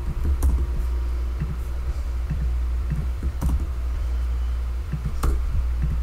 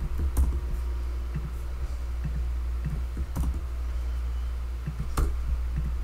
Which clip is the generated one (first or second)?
first